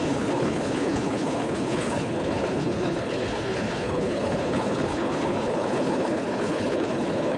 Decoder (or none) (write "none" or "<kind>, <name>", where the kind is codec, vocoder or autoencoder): codec, HILCodec